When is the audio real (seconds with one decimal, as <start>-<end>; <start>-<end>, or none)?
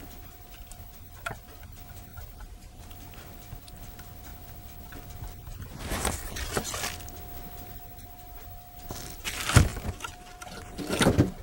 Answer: 0.0-2.1; 2.9-11.4